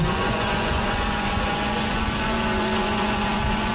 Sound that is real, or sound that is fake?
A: fake